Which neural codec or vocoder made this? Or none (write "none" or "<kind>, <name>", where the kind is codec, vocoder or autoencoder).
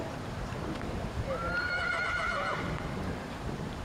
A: vocoder, BigVGAN v2